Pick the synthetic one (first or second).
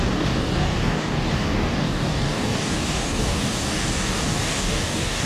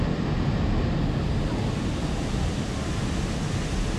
first